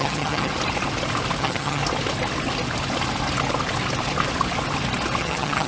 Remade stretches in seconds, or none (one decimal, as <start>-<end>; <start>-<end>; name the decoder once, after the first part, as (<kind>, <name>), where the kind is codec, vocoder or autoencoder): 0.0-0.5 (vocoder, HiFi-GAN); 1.4-1.8; 5.2-5.7